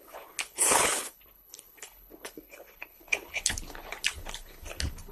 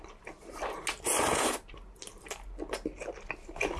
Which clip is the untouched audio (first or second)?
second